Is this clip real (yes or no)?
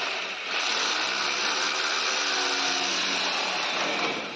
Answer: yes